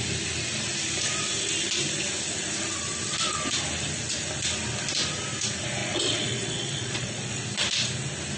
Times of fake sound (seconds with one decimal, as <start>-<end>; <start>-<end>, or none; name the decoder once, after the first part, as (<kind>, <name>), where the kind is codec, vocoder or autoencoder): 5.8-7.4 (vocoder, Vocos)